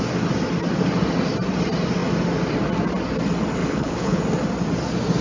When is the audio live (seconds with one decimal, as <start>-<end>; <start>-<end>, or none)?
0.0-3.6; 4.2-5.2